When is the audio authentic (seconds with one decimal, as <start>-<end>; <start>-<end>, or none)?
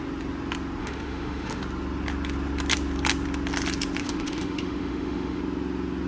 0.0-0.8; 1.6-4.0; 5.4-6.1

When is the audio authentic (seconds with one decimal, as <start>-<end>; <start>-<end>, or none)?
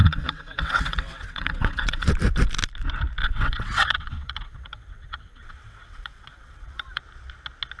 2.1-3.2; 7.0-7.8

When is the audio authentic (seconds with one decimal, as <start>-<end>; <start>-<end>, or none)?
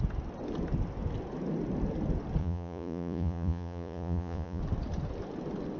0.0-2.4; 4.6-5.8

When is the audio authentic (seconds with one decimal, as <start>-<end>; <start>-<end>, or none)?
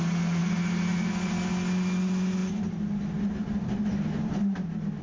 0.0-5.0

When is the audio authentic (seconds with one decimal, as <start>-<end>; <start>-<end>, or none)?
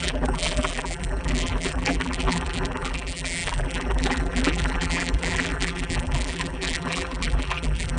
none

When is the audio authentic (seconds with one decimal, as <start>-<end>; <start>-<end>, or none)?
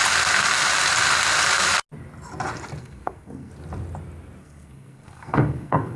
0.0-2.8; 3.5-4.4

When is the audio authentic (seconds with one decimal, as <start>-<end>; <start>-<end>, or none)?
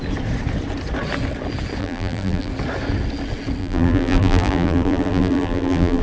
0.0-1.8; 2.5-3.6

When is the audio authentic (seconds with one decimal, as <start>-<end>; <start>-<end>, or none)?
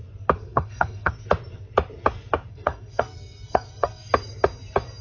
0.0-0.4; 1.1-2.5; 4.1-5.0